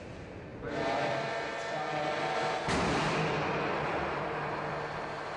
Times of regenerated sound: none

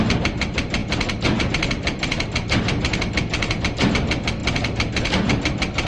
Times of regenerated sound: none